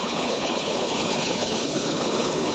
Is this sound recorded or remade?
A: remade